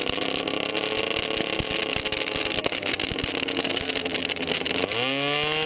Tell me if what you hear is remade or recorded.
recorded